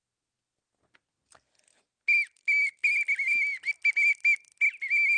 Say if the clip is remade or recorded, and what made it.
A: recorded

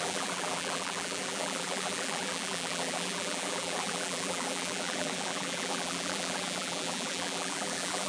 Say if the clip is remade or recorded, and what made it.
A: remade, vocoder, BigVGAN v2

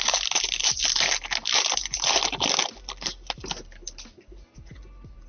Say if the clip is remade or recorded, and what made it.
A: recorded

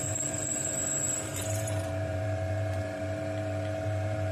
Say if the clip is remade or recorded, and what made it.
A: remade, vocoder, BigVGAN v2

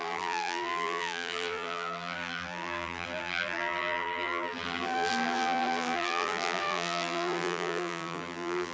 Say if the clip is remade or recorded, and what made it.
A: remade, vocoder, BigVGAN v2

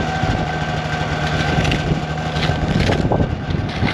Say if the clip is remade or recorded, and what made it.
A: recorded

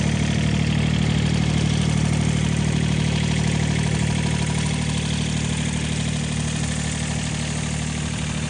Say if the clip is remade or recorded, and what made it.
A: recorded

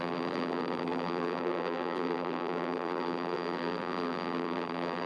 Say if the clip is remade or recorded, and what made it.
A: remade, vocoder, BigVGAN v2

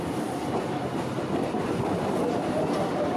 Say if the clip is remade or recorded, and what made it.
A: recorded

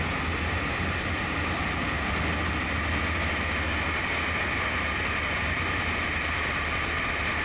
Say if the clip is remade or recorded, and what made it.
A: recorded